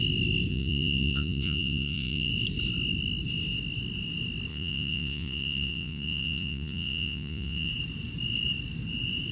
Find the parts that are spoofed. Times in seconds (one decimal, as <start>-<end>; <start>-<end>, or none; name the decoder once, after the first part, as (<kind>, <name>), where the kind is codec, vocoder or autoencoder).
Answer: 0.5-2.3 (vocoder, Vocos); 4.5-7.7